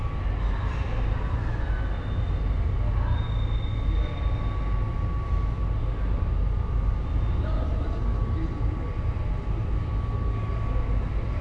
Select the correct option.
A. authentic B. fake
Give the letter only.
A